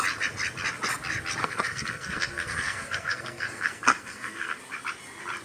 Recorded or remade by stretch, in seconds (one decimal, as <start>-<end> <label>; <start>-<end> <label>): 0.0-1.4 recorded; 1.4-4.6 remade; 4.6-5.4 recorded